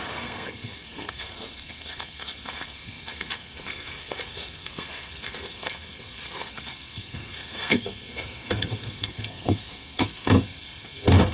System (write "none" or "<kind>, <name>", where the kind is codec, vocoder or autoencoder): codec, SNAC